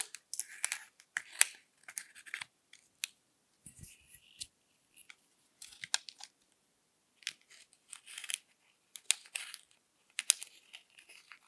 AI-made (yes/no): no